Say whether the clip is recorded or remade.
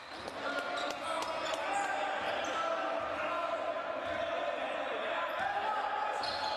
recorded